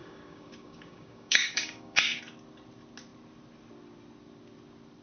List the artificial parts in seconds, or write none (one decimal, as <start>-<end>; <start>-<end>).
0.0-2.2